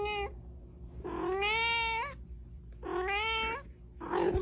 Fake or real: real